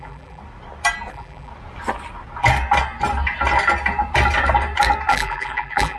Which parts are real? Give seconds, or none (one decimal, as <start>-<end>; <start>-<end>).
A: 0.4-1.1; 1.5-5.1